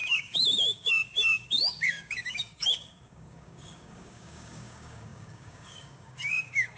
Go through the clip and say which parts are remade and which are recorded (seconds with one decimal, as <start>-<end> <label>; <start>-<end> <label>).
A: 0.0-6.8 remade